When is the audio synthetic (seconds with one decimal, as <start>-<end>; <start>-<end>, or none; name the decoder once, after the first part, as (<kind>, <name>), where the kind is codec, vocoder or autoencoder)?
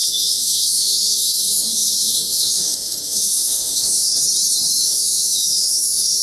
0.0-4.1 (autoencoder, DAC-VAE); 4.8-6.2